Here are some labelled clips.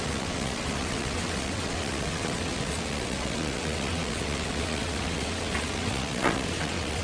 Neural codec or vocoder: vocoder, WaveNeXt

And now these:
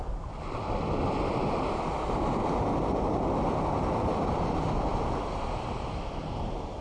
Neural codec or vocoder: none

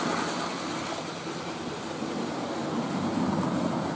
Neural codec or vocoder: none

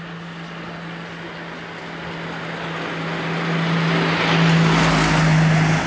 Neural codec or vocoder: none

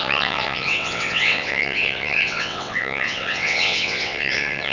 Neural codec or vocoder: vocoder, WaveNeXt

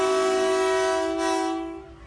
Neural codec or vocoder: none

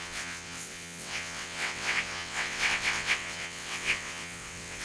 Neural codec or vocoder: vocoder, WaveNeXt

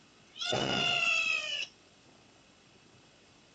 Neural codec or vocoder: vocoder, WaveNeXt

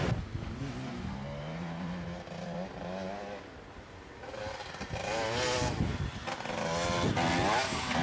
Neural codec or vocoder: none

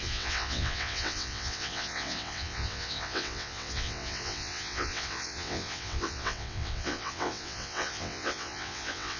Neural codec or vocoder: vocoder, WaveNeXt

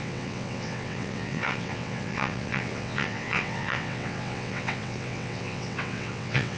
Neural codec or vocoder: vocoder, WaveNeXt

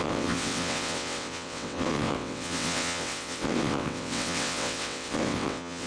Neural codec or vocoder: vocoder, WaveNeXt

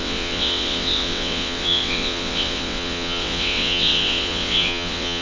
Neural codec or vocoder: vocoder, WaveNeXt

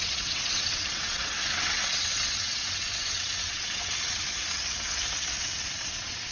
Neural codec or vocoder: vocoder, WaveNeXt